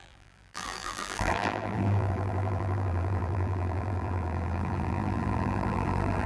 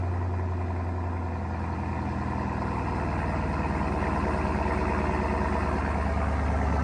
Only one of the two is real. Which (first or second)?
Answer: second